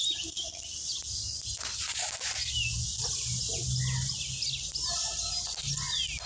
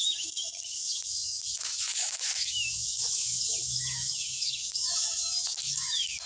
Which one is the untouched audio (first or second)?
first